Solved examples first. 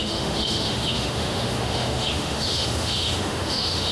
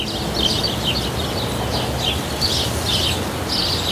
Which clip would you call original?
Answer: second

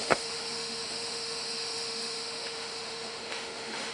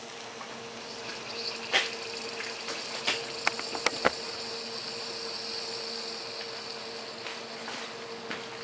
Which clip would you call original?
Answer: second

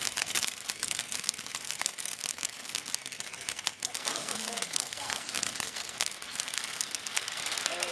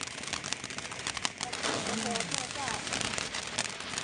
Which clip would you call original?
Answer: second